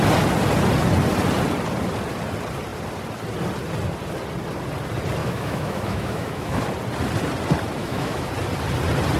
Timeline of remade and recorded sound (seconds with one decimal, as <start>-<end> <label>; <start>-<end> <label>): 0.0-5.2 recorded; 5.2-6.6 remade; 6.6-7.8 recorded; 7.8-8.3 remade; 8.3-9.2 recorded